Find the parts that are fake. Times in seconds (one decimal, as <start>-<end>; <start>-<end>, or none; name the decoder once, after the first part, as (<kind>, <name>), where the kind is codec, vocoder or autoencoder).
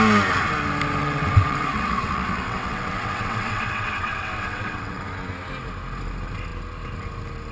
1.0-5.0 (vocoder, WaveNeXt)